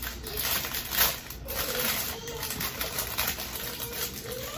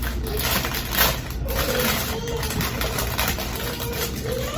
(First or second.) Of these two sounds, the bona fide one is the second